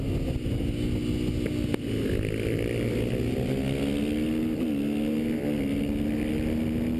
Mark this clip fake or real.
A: real